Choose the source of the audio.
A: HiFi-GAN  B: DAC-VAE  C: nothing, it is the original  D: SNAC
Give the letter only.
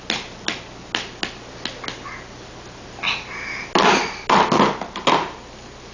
C